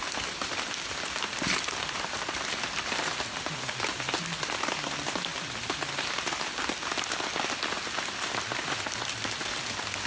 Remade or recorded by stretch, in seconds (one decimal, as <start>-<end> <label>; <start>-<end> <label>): 0.0-5.3 recorded; 5.3-5.9 remade; 5.9-10.1 recorded